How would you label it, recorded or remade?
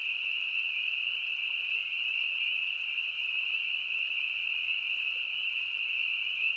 recorded